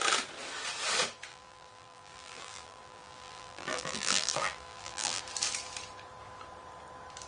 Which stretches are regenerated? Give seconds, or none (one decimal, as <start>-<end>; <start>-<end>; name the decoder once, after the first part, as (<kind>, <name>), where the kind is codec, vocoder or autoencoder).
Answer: 1.3-5.2 (vocoder, BigVGAN v2)

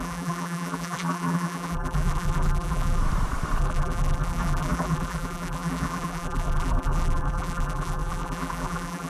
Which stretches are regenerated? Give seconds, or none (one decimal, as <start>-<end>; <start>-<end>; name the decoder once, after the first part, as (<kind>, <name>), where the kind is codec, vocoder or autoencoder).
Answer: 0.0-3.0 (vocoder, BigVGAN v2); 3.6-9.1

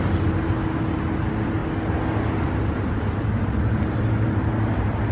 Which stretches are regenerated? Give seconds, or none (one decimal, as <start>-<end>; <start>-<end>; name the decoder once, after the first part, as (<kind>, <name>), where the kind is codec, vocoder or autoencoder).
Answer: none

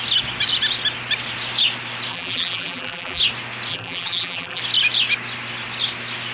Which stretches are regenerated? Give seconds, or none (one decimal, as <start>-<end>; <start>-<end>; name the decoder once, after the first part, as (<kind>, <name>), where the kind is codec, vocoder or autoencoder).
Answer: 2.1-3.2 (vocoder, BigVGAN v2); 3.7-4.6

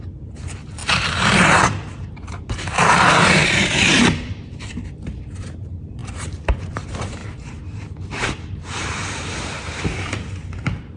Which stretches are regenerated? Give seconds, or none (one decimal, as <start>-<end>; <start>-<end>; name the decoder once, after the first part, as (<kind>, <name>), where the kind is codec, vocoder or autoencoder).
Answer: 0.0-11.0 (vocoder, BigVGAN v2)